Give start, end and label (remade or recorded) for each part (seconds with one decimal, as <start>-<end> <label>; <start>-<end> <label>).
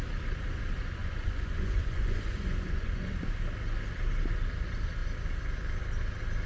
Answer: 0.0-1.0 recorded; 1.0-3.3 remade; 3.3-6.5 recorded